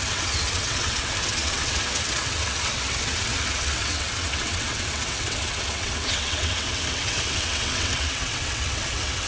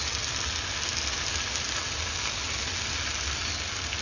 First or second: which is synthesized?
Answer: first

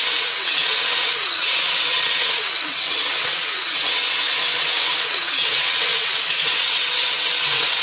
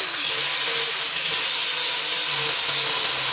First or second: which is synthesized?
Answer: first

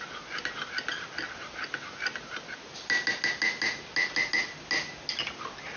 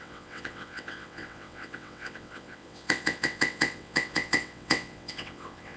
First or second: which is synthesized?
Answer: second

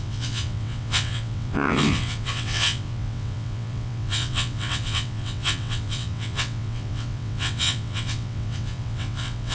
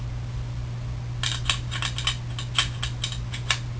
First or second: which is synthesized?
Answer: first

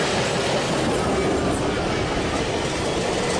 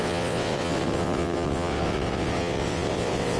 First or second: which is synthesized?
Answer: second